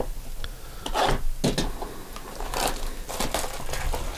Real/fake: real